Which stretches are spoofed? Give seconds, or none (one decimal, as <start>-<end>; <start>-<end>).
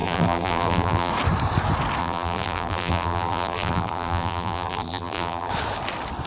0.0-1.1; 2.0-5.5